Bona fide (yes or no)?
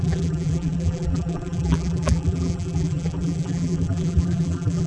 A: no